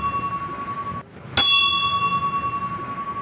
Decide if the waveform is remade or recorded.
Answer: recorded